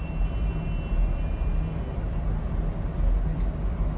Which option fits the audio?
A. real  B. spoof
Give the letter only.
A